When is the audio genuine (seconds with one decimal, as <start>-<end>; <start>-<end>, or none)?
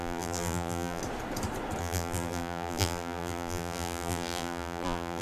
1.0-1.8